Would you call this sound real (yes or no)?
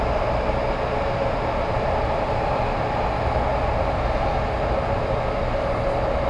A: yes